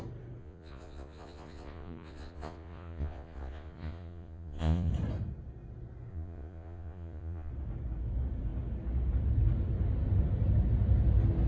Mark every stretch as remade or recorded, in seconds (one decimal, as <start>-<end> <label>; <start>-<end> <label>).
0.0-0.4 recorded; 0.4-4.9 remade; 4.9-6.1 recorded; 6.1-7.5 remade; 7.5-11.5 recorded